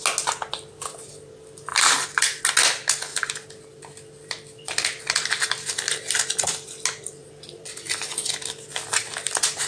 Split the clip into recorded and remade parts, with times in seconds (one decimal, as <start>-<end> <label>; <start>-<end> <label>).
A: 0.0-1.7 recorded; 1.7-2.4 remade; 2.4-3.1 recorded; 3.1-5.0 remade; 5.0-7.2 recorded; 7.2-9.7 remade